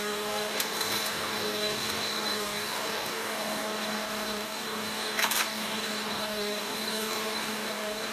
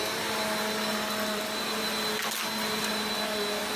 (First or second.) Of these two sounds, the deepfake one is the first